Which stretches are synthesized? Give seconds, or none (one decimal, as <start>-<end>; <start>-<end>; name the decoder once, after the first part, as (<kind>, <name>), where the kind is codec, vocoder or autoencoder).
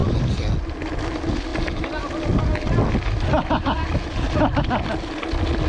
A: none